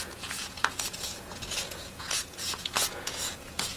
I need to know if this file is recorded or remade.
remade